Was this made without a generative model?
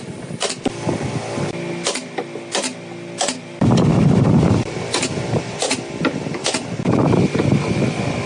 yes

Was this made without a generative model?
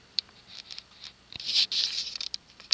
no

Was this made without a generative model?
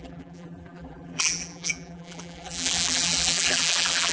no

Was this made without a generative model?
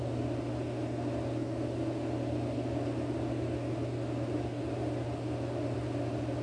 yes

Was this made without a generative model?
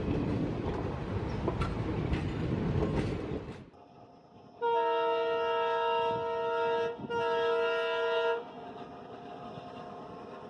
yes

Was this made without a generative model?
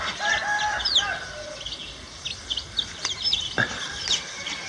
yes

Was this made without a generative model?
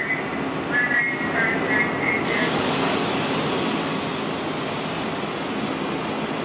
yes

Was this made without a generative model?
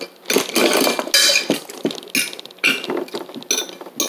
yes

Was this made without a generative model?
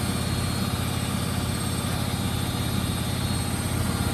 yes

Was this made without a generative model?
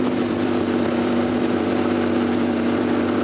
no